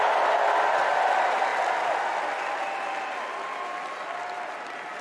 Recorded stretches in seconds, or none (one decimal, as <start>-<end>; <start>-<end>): 0.0-5.0

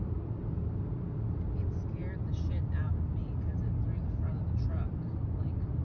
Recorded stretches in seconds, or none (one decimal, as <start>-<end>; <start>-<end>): 0.0-5.8

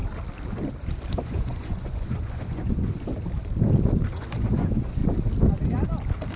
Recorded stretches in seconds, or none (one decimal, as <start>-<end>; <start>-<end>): 0.0-1.2; 3.1-4.1; 5.0-6.4

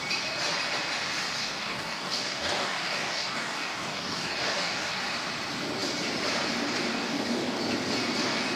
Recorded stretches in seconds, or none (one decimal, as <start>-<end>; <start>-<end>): 0.0-1.4; 5.0-6.9; 7.6-8.6

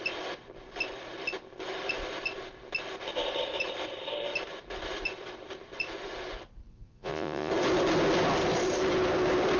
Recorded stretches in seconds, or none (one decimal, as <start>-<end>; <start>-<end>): 0.0-6.7; 7.5-9.6

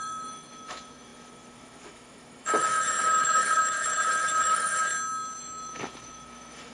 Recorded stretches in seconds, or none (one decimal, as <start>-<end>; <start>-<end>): 4.9-5.4